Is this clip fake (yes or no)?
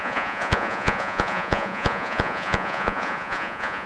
yes